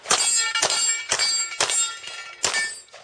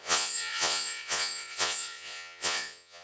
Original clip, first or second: first